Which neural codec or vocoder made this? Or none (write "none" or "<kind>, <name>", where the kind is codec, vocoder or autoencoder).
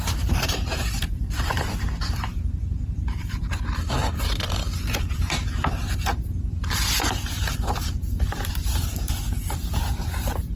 vocoder, BigVGAN v2